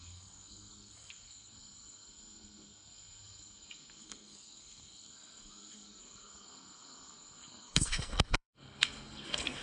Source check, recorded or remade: remade